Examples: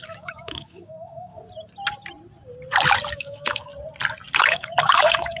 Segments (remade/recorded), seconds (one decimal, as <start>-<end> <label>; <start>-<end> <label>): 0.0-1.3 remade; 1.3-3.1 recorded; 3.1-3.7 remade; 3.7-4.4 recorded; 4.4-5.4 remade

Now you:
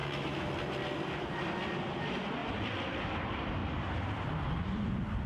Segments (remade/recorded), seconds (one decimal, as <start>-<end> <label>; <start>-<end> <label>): 0.0-0.5 remade; 0.5-5.3 recorded

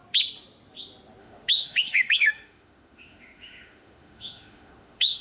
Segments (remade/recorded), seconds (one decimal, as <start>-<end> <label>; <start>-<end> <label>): 0.0-1.2 recorded; 1.2-5.2 remade

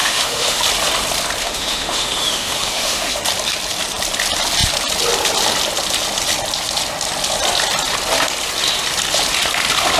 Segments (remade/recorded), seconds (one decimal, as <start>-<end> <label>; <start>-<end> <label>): 0.0-0.6 remade; 0.6-1.4 recorded; 1.4-3.2 remade; 3.2-10.0 recorded

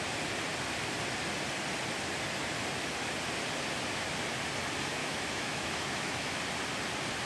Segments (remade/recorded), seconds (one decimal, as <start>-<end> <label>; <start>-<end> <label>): 0.0-5.0 recorded; 5.0-6.4 remade; 6.4-7.3 recorded

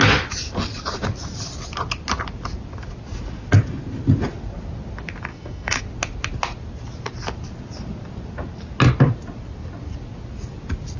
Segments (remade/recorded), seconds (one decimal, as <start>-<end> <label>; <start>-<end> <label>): 0.0-5.3 recorded; 5.3-5.8 remade; 5.8-11.0 recorded

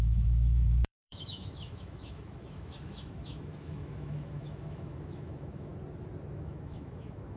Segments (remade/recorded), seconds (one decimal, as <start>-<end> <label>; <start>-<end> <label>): 0.0-5.7 remade; 5.7-6.3 recorded; 6.3-7.4 remade